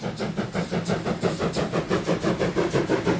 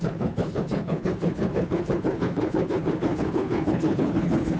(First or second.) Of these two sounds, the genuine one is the first